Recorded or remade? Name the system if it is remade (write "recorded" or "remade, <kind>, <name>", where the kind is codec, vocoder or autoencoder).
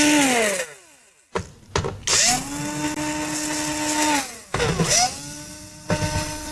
recorded